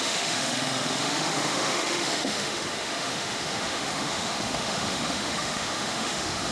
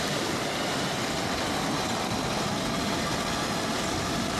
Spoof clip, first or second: first